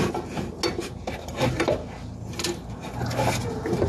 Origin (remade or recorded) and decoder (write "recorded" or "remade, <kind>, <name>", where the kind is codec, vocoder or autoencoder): recorded